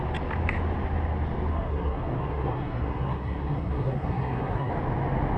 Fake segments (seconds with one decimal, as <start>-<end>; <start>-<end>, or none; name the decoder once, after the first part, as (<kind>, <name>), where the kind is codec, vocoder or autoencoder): 1.5-4.7 (codec, SNAC)